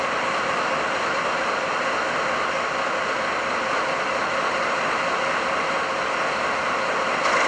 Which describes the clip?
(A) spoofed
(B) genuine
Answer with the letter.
B